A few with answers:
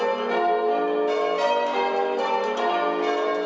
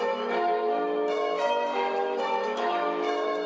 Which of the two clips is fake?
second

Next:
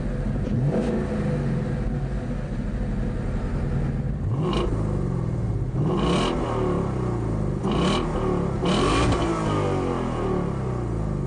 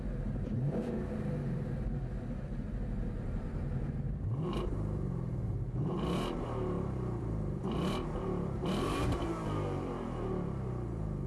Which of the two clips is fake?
second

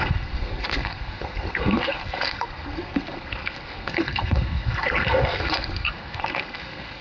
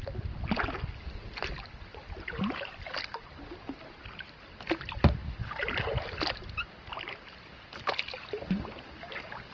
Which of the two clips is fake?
first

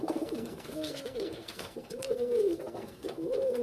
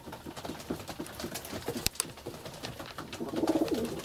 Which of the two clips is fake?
first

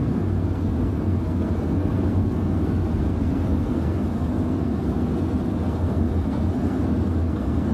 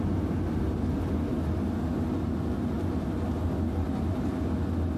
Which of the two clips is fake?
first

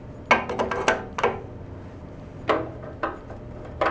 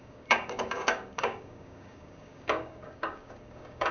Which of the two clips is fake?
second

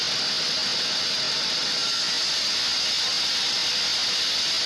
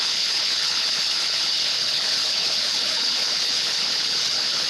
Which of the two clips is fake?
second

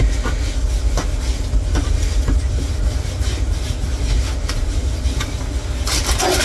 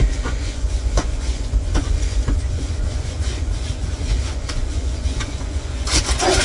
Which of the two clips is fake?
second